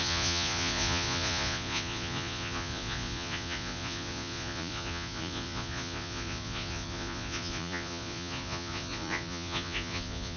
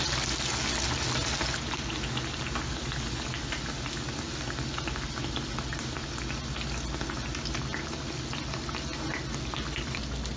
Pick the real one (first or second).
second